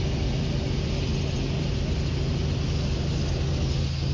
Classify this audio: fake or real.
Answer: real